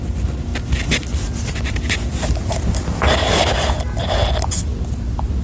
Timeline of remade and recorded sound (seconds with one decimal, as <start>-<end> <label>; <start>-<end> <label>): 0.0-5.4 recorded